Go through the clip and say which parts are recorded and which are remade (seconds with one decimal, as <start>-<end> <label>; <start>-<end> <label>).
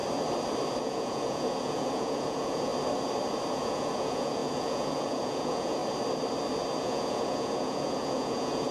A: 0.0-0.8 recorded; 0.8-2.7 remade; 2.7-3.5 recorded; 3.5-5.8 remade; 5.8-6.8 recorded; 6.8-8.7 remade